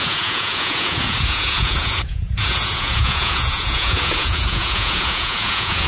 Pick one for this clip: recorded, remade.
remade